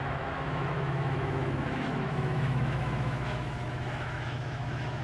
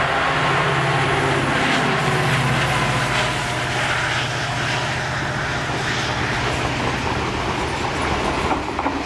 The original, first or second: second